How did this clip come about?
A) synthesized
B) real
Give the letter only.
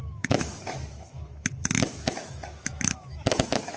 A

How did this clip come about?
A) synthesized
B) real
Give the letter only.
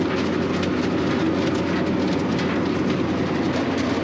B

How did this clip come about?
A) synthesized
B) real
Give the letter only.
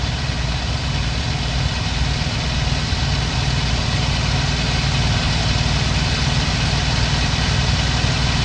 B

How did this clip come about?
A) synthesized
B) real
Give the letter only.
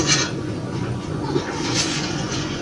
A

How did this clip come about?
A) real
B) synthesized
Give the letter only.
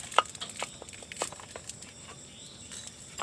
A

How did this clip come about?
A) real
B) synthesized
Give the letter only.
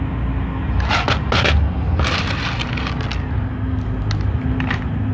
A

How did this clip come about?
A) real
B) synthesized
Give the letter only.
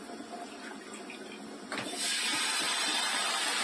A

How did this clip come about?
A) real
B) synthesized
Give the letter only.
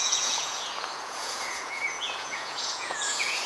B